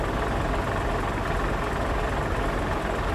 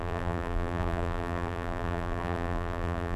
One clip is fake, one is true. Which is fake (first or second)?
second